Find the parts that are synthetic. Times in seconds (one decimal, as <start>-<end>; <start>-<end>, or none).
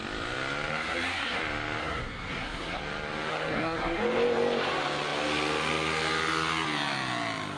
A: 0.7-1.4; 1.8-2.8; 3.3-4.0